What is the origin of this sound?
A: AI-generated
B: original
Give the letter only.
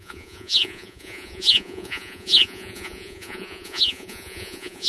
A